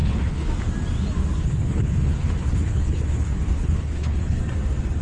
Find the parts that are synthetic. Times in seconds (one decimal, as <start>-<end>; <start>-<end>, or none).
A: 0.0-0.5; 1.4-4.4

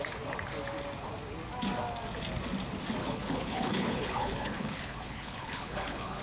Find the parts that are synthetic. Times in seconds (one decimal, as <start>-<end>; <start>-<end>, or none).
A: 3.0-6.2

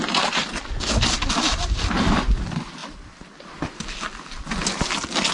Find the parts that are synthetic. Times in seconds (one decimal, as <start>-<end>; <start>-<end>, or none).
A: none

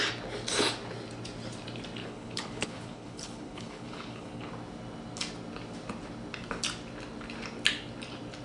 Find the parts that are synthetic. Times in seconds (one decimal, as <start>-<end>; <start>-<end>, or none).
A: 2.0-4.5